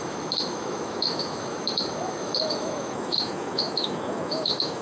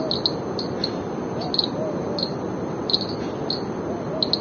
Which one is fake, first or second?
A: first